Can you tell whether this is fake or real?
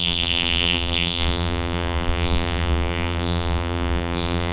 fake